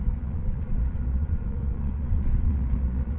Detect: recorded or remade remade